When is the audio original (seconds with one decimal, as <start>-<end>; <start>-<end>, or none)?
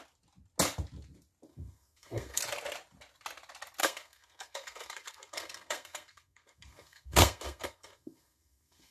0.0-1.5; 2.4-3.8